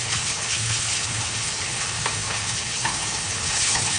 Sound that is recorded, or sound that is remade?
remade